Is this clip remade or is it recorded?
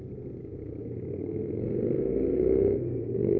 remade